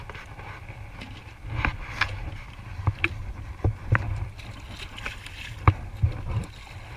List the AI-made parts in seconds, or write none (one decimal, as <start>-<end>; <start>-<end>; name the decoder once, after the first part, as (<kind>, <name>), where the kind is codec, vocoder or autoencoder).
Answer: none